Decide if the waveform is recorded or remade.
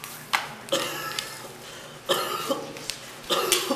recorded